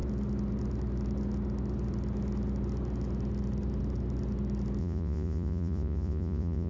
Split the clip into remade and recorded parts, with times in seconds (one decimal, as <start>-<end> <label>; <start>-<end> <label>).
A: 0.0-4.8 recorded; 4.8-6.7 remade